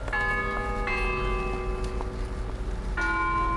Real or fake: real